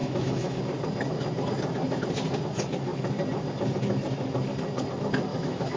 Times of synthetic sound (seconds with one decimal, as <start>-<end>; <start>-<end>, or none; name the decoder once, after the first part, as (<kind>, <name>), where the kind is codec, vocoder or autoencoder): 0.0-0.6 (autoencoder, DAC-VAE); 5.3-5.8